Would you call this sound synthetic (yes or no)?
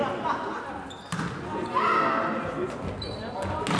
no